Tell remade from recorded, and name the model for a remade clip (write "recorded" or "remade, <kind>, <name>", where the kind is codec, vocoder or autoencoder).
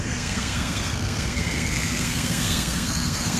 remade, codec, SNAC